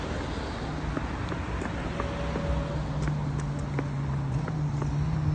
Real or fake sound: real